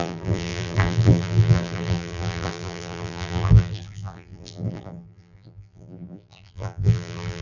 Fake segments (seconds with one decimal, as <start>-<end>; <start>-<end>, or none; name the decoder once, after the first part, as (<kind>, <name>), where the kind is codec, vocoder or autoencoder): 0.0-7.4 (vocoder, BigVGAN v2)